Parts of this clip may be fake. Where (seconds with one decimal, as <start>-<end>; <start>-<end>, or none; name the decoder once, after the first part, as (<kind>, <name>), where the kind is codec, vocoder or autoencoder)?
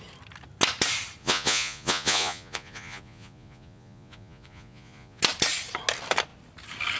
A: 1.2-5.2 (vocoder, Vocos)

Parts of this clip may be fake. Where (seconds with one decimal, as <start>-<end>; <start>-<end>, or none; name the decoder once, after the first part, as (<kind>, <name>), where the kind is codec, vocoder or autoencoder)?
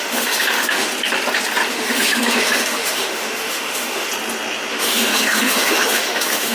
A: 0.0-0.9 (autoencoder, DAC-VAE); 1.7-4.1; 4.7-6.5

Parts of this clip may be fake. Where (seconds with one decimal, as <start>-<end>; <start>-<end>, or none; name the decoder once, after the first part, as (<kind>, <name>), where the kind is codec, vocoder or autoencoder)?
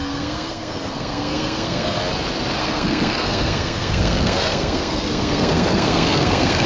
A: 0.0-2.0 (codec, SNAC); 2.6-6.7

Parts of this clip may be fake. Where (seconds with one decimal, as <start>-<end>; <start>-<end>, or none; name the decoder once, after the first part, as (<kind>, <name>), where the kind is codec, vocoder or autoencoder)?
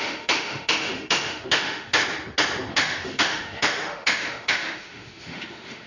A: 0.0-2.0 (autoencoder, DAC-VAE); 2.7-5.9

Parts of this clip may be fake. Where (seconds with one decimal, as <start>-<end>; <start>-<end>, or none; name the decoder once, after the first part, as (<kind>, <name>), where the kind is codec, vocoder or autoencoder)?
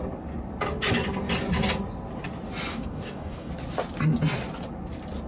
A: 2.7-3.5 (codec, DAC)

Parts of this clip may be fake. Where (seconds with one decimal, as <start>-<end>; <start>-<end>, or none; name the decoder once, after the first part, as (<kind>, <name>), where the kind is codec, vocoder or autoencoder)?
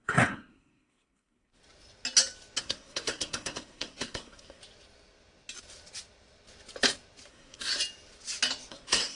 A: 0.0-1.6 (codec, SNAC); 2.6-4.6; 7.3-7.7; 8.7-9.2